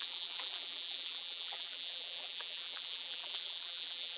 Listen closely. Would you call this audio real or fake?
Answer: fake